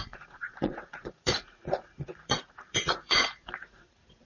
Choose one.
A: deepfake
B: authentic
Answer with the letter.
A